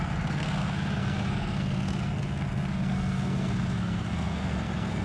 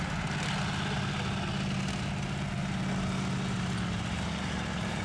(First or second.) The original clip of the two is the second